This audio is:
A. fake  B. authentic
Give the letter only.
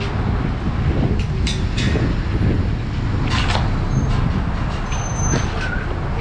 B